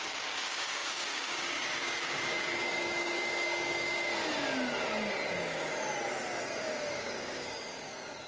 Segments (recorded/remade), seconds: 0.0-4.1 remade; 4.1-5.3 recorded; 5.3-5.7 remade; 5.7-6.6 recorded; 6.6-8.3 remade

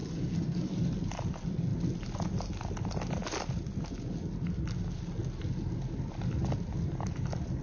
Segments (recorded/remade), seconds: 0.0-0.7 remade; 0.7-7.6 recorded

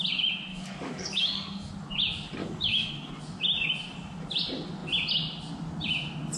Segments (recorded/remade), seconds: 0.0-0.5 recorded; 0.5-1.7 remade; 1.7-2.4 recorded; 2.4-3.1 remade; 3.1-6.4 recorded

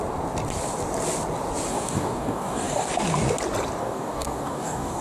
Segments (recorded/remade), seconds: 0.0-1.7 recorded; 1.7-2.9 remade; 2.9-3.8 recorded; 3.8-5.0 remade

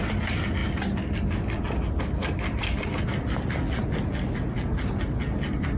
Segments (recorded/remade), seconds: 0.0-5.8 recorded

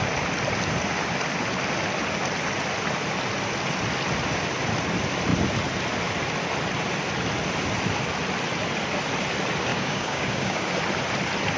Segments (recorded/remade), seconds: 0.0-9.7 recorded; 9.7-10.7 remade; 10.7-11.6 recorded

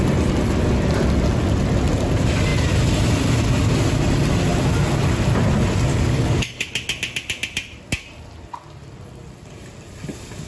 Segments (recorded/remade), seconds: 0.0-5.9 recorded; 5.9-6.7 remade; 6.7-10.5 recorded